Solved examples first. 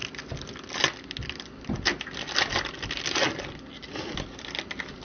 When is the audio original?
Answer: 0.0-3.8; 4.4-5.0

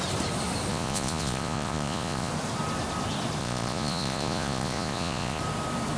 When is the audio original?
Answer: 0.0-0.7; 2.3-3.4; 5.4-6.0

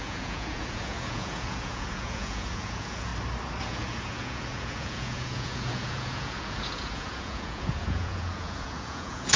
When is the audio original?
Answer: 3.1-3.6

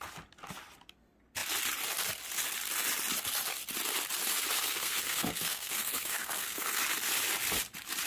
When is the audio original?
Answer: 0.0-4.6; 6.8-8.1

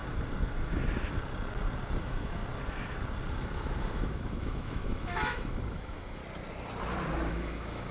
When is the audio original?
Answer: 0.0-2.0; 2.4-3.3; 6.2-7.3

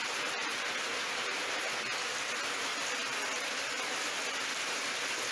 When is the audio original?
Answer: 0.0-5.3